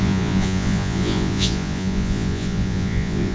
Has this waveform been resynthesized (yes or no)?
yes